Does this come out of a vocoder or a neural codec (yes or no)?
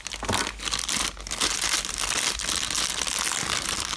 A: no